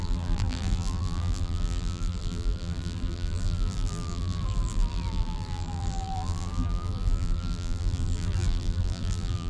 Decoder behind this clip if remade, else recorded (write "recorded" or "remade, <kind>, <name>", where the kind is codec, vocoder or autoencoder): remade, vocoder, BigVGAN v2